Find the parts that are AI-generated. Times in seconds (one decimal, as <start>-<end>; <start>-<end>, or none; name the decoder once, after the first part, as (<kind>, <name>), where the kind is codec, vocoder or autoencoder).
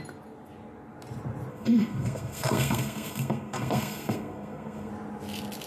1.5-4.9 (codec, SNAC)